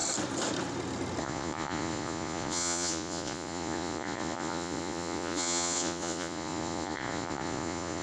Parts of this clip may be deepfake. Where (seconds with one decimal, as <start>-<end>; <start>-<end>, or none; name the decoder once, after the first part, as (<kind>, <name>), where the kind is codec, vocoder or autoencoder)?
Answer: 1.2-8.0 (vocoder, Vocos)